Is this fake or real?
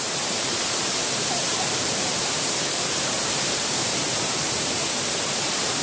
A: fake